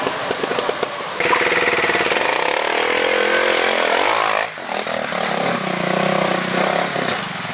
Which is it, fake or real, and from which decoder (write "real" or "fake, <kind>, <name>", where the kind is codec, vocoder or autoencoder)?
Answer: real